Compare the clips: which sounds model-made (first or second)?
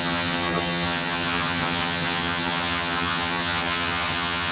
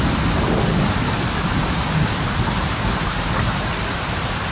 first